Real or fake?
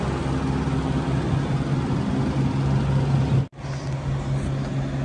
real